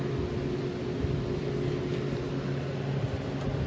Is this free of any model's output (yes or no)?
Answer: yes